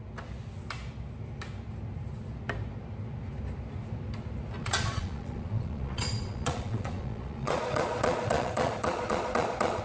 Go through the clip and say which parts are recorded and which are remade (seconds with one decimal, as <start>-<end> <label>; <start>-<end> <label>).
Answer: 0.0-4.6 recorded; 4.6-9.8 remade